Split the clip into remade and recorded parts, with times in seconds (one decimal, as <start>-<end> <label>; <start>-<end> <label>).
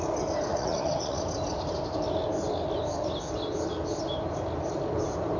0.0-0.5 recorded; 0.5-1.2 remade; 1.2-5.4 recorded